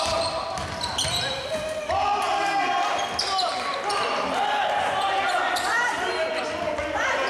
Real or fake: real